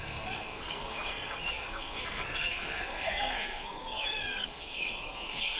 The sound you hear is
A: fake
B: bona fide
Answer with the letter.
A